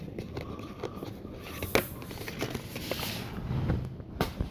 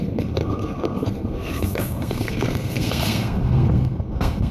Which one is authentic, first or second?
first